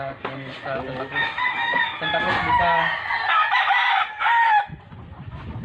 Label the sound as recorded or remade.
recorded